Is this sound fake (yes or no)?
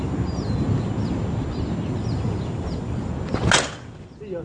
no